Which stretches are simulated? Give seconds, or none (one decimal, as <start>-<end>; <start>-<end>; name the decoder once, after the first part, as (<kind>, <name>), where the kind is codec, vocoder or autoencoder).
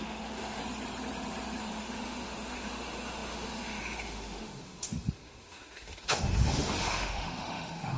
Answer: 0.0-0.6 (autoencoder, DAC-VAE); 1.6-8.0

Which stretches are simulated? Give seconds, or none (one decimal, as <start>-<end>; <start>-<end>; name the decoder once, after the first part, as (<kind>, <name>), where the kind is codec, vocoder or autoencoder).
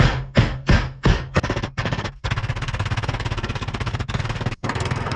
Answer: 0.0-5.2 (codec, SNAC)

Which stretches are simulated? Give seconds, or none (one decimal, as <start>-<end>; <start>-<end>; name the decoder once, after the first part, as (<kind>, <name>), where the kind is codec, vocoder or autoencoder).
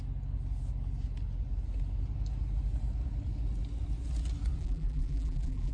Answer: 4.6-5.7 (vocoder, BigVGAN v2)